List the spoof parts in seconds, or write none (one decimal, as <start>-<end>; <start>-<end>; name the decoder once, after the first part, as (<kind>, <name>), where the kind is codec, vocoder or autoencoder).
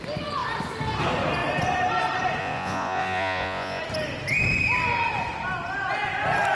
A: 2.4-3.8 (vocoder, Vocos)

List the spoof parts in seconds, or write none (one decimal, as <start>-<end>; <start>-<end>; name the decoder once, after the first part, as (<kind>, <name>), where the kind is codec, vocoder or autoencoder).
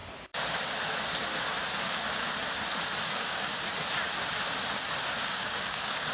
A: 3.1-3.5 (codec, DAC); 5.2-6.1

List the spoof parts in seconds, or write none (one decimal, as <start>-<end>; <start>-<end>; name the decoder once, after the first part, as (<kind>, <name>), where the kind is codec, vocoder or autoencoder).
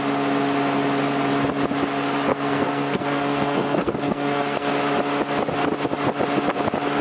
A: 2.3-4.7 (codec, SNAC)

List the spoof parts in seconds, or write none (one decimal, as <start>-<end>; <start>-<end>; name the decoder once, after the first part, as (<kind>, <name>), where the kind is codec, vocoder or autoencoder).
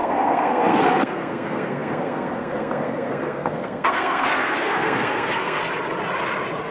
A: 0.0-5.6 (codec, SNAC)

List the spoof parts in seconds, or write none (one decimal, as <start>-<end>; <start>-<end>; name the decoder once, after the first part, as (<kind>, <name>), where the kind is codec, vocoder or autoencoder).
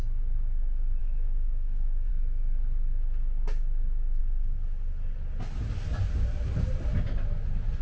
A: 1.0-2.1 (codec, DAC)